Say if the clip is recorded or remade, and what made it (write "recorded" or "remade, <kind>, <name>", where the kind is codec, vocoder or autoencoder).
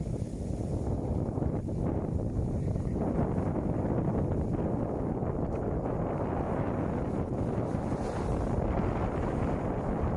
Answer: recorded